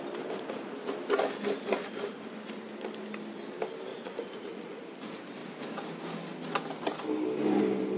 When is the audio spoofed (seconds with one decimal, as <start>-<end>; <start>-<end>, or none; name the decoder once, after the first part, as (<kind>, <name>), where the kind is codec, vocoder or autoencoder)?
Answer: 3.9-4.8 (vocoder, Vocos)